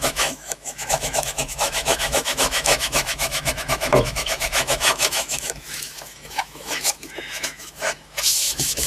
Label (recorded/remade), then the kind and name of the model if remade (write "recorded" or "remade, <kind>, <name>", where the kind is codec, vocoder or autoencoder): remade, autoencoder, DAC-VAE